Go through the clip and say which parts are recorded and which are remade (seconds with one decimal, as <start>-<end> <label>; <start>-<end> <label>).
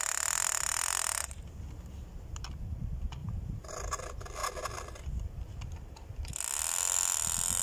0.0-3.2 recorded; 3.2-3.7 remade; 3.7-7.6 recorded